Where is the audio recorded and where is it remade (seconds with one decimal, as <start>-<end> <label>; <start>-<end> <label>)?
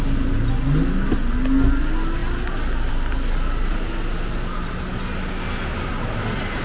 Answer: 0.0-6.6 recorded